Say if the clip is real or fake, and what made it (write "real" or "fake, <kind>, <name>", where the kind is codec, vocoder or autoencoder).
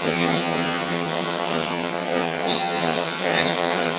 fake, vocoder, HiFi-GAN